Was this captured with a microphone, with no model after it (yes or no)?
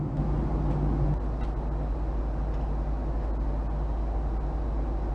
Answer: yes